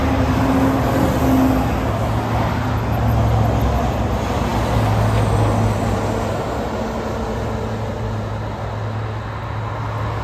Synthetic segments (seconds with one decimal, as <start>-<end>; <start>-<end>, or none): none